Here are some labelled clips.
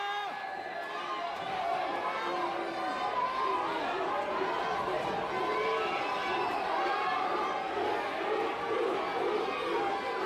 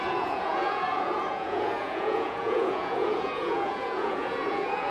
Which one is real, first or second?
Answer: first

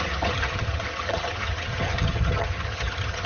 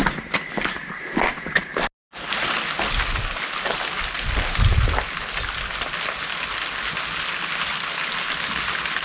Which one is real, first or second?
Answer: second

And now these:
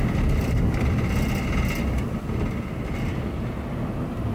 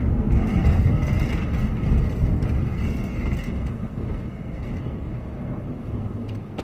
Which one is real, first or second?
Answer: first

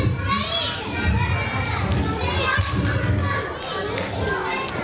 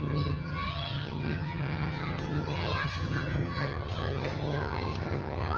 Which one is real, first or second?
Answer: first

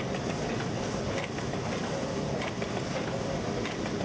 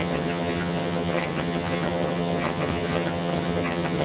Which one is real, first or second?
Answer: first